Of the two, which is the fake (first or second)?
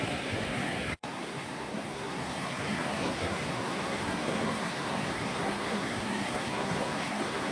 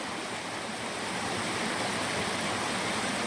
first